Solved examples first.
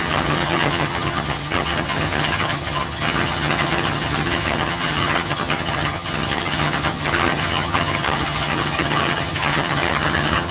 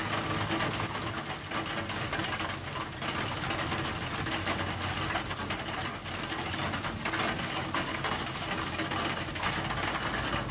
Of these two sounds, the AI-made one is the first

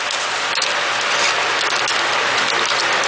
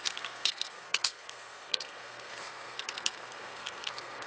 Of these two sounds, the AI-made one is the second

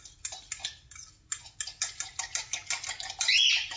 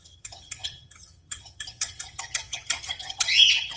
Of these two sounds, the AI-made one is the second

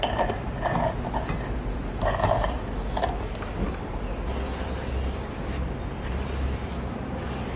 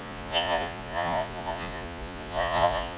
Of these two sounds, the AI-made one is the second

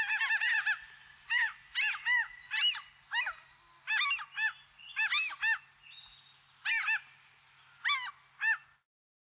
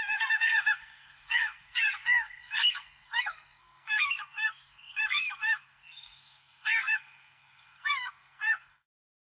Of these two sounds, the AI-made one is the second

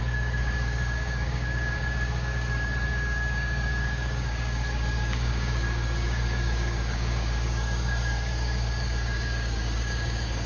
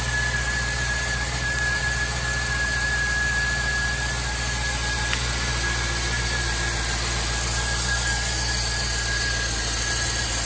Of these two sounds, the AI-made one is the first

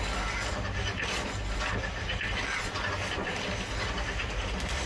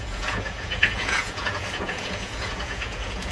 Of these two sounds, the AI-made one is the second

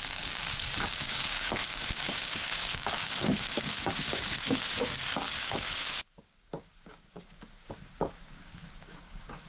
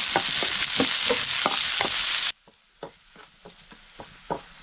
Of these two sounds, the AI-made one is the first